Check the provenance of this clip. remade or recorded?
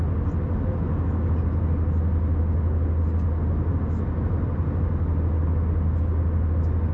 recorded